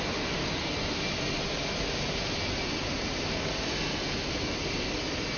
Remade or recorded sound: recorded